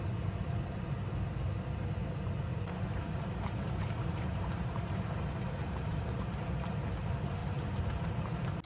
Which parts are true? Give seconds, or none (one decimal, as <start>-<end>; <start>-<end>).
0.0-2.5; 6.4-7.4; 8.2-8.7